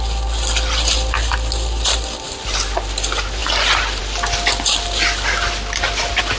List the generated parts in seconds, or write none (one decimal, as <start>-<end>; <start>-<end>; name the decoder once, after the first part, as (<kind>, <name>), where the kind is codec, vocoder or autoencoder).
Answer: none